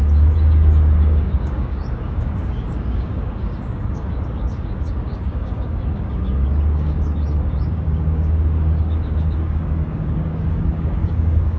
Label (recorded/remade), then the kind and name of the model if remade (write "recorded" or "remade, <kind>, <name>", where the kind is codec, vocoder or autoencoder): remade, codec, DAC